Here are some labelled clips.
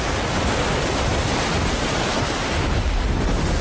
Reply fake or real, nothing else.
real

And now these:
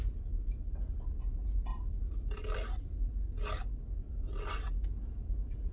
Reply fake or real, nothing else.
real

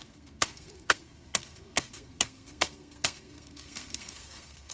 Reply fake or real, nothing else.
fake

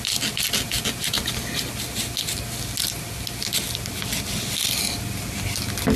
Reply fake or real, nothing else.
real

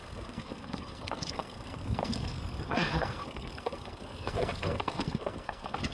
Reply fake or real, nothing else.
fake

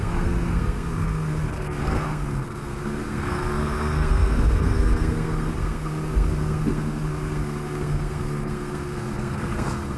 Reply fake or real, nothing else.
fake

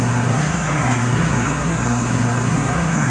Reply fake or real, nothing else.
fake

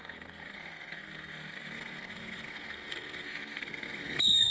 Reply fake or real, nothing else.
fake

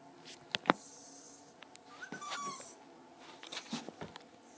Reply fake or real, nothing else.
real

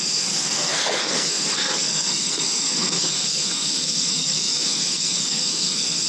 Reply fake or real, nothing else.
fake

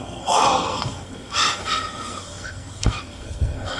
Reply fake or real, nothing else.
fake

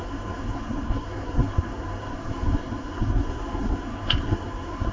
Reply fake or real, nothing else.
fake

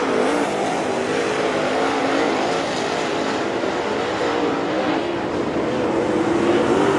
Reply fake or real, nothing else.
real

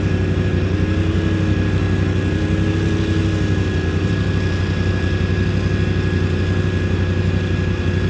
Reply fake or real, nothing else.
real